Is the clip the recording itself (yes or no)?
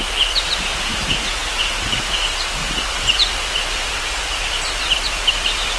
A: yes